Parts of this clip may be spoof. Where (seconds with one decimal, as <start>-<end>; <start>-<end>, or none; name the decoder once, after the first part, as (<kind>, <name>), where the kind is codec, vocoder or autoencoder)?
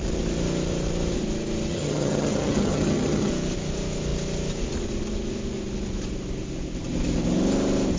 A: 1.7-3.3 (vocoder, HiFi-GAN)